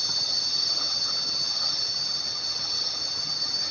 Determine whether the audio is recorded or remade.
remade